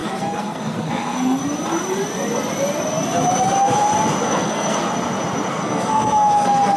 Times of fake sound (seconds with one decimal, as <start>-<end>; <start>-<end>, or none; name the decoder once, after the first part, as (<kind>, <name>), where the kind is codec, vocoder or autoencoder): 0.0-1.4 (codec, SNAC); 4.2-4.8; 5.5-6.8